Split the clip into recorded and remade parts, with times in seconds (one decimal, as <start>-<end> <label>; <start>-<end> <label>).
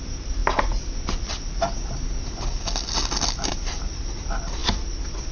0.0-5.3 recorded